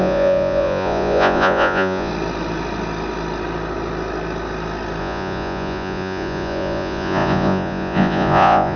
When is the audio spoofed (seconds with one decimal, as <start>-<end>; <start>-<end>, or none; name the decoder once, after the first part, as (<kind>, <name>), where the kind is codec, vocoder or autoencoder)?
0.0-2.1 (vocoder, Vocos); 5.0-8.8